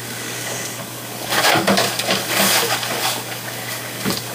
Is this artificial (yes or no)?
yes